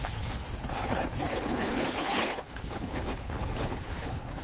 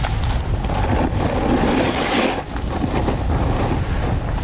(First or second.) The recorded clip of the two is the second